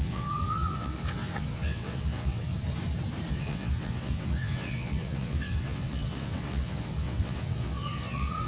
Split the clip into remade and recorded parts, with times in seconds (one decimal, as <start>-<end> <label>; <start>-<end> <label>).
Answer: 0.0-2.5 remade; 2.5-3.3 recorded; 3.3-8.5 remade